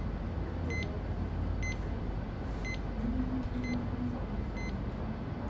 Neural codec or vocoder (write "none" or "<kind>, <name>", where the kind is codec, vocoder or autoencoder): none